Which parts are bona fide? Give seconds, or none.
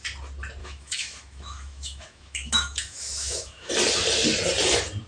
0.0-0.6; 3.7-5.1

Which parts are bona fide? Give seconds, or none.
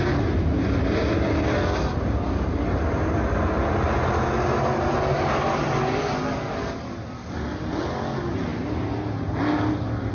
0.0-10.1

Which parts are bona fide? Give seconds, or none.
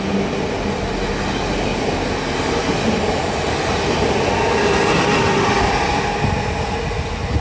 0.0-2.6; 3.9-7.4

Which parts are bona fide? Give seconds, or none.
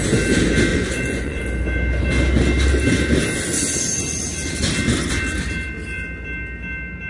0.0-0.7; 1.4-7.1